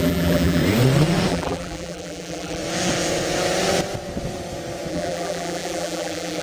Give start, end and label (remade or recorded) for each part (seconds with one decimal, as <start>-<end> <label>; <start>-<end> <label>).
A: 0.0-0.6 remade; 0.6-1.3 recorded; 1.3-2.6 remade; 2.6-4.9 recorded; 4.9-6.4 remade